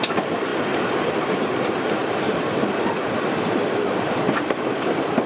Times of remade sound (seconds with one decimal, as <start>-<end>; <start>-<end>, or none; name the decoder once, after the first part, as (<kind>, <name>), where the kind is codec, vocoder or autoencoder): 2.0-4.6 (vocoder, BigVGAN v2)